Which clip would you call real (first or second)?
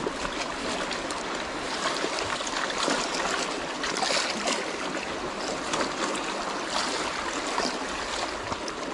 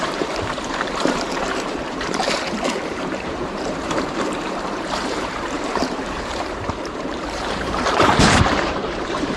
first